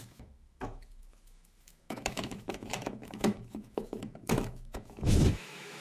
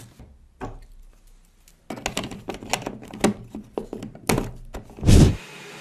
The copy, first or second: first